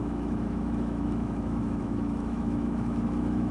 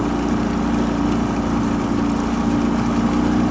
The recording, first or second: second